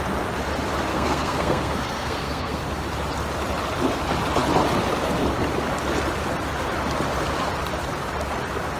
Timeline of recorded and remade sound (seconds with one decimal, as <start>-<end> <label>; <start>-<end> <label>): 0.0-0.9 recorded; 0.9-2.6 remade; 2.6-8.8 recorded